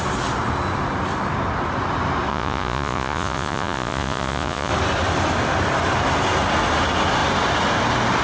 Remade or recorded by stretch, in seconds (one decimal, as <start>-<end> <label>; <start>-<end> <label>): 0.0-2.3 recorded; 2.3-4.7 remade; 4.7-8.2 recorded